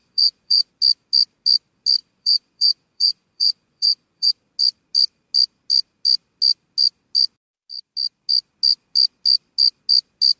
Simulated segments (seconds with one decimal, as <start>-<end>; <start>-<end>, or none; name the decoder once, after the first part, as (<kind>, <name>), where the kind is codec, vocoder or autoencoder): 0.0-0.7 (vocoder, Vocos); 2.0-4.3